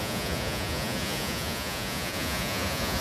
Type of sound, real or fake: fake